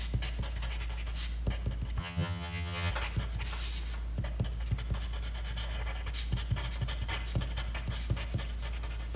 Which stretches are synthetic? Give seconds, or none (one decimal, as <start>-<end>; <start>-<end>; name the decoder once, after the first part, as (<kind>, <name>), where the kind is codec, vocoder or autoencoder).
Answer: 2.0-2.9 (vocoder, HiFi-GAN)